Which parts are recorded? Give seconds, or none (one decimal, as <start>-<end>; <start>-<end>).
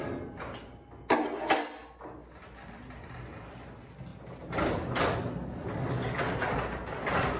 0.0-7.4